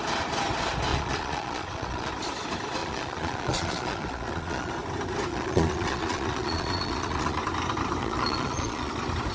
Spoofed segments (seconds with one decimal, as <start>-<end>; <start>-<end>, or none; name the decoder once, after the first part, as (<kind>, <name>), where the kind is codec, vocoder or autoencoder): 0.9-2.1 (vocoder, Vocos); 2.8-4.7; 5.3-7.4; 8.0-8.9